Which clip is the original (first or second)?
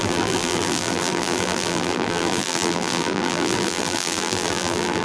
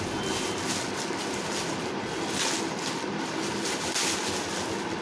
second